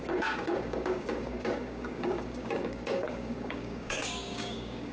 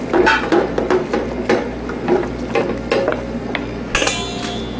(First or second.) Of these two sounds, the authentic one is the second